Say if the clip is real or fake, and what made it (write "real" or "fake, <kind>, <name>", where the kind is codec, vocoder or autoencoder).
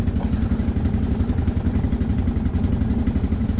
real